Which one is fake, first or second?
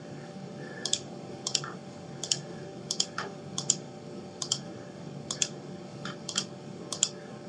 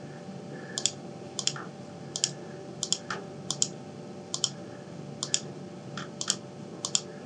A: first